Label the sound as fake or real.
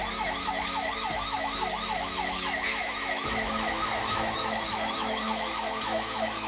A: fake